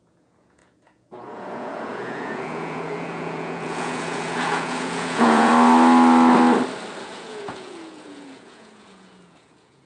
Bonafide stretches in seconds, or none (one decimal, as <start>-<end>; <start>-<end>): 5.5-7.0